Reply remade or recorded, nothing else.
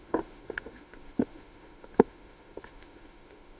remade